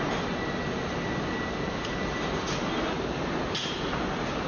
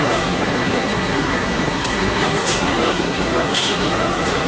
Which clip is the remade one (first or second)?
second